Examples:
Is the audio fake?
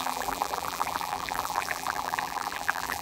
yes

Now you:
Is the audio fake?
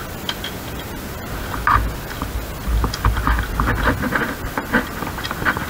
no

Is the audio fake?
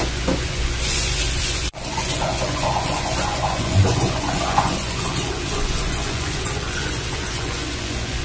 yes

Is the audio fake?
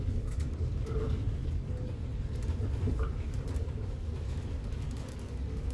yes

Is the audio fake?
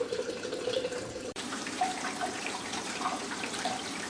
yes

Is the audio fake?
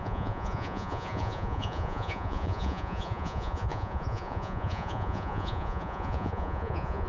yes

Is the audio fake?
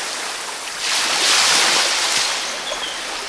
no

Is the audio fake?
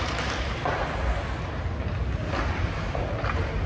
no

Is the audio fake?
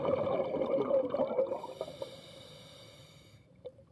no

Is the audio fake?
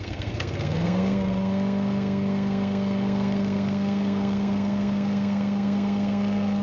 yes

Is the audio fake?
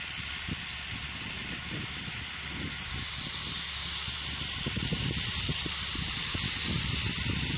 no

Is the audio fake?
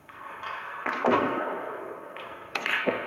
yes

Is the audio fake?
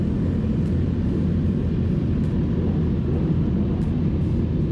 no